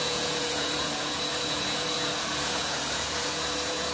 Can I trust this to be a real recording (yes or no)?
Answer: no